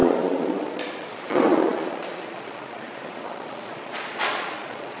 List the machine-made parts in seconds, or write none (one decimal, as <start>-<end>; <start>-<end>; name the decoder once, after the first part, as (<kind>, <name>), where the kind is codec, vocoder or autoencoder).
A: 0.0-5.0 (vocoder, Vocos)